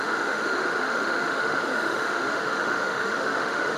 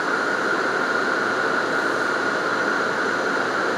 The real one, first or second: second